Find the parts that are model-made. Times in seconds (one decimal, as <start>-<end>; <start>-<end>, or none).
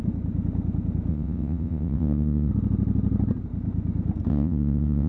1.1-2.5; 4.3-5.1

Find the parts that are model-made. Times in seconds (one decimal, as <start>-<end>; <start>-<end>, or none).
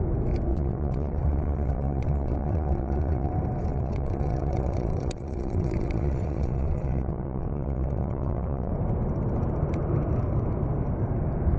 0.5-3.3; 3.7-8.7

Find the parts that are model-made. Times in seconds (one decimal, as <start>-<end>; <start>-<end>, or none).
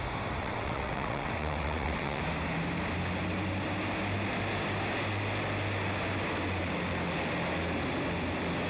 0.4-2.2